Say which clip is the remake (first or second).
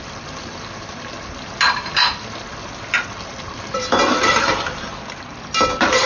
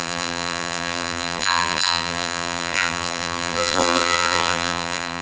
second